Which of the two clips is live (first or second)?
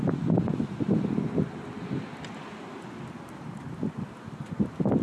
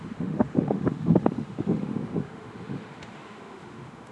first